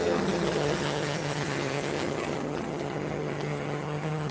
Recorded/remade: remade